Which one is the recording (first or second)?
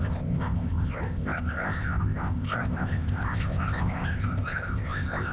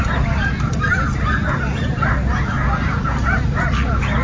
second